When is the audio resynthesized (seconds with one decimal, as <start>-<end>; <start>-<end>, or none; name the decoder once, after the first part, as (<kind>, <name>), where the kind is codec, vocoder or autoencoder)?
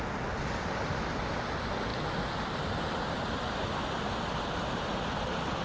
none